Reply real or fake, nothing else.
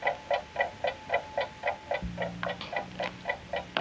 real